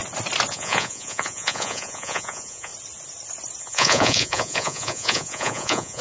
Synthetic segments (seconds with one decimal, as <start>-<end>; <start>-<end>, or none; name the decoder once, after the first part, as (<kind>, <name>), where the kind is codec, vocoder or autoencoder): 0.5-2.7 (vocoder, Vocos); 3.6-6.0